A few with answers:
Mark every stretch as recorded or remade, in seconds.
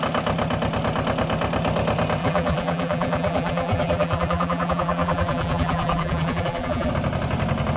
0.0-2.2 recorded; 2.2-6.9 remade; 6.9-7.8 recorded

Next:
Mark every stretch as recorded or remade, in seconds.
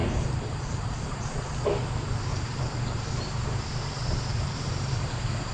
0.0-1.2 remade; 1.2-2.3 recorded; 2.3-3.1 remade; 3.1-4.3 recorded; 4.3-5.5 remade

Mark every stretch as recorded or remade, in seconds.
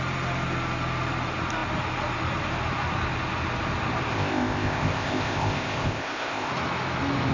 0.0-4.1 recorded; 4.1-6.5 remade; 6.5-7.3 recorded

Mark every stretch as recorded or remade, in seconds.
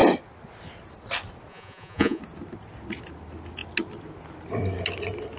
0.0-1.5 recorded; 1.5-2.2 remade; 2.2-5.4 recorded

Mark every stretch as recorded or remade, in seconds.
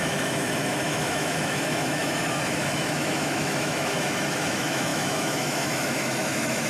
0.0-6.7 remade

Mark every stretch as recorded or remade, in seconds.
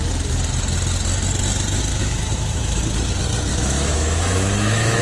0.0-1.9 recorded; 1.9-2.8 remade; 2.8-3.5 recorded; 3.5-5.0 remade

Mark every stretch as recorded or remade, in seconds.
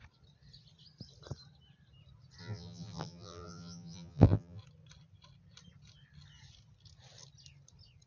0.0-2.4 recorded; 2.4-4.6 remade; 4.6-8.1 recorded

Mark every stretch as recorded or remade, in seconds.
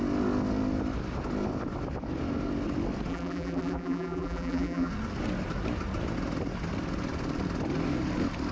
0.0-3.1 recorded; 3.1-4.9 remade; 4.9-8.5 recorded